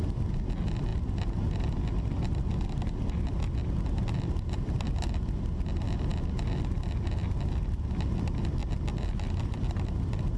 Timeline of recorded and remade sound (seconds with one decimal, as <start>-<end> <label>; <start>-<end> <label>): 0.0-10.4 recorded